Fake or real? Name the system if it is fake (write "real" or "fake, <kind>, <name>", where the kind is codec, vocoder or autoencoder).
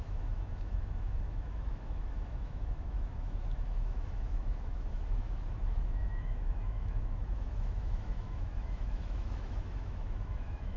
fake, autoencoder, DAC-VAE